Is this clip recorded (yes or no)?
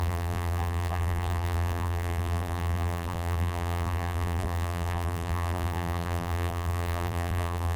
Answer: no